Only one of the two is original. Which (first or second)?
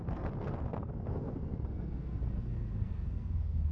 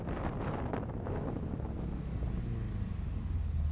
second